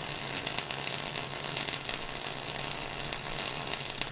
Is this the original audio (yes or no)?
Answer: yes